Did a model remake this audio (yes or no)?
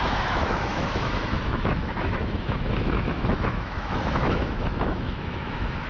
yes